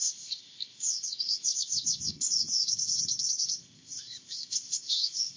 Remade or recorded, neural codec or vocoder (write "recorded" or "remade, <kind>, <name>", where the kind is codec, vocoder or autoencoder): remade, codec, ZipCodec